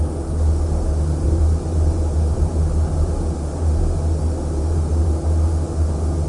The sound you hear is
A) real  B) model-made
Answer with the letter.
A